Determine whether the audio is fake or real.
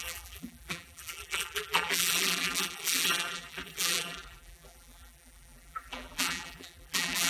fake